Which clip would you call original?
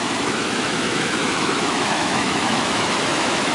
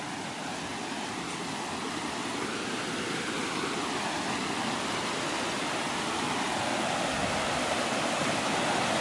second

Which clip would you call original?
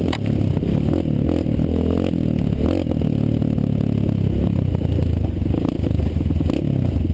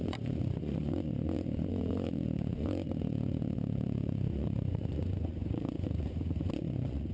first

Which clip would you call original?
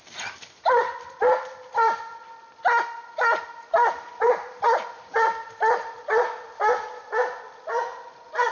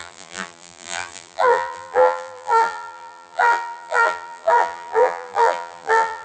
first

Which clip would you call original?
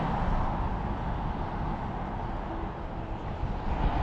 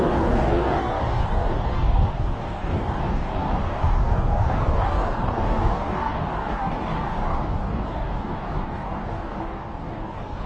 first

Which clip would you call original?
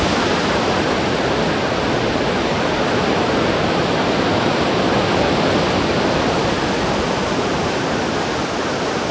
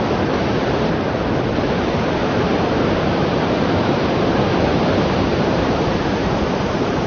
first